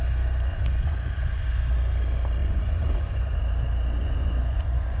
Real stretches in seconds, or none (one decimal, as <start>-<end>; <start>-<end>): 0.0-0.5; 1.6-2.4; 3.4-4.0